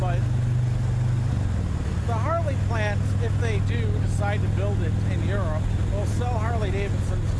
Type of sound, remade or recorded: recorded